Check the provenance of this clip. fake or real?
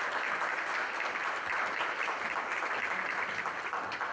real